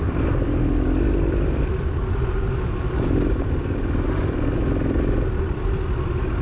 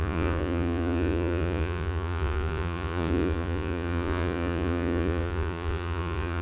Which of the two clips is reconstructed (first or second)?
second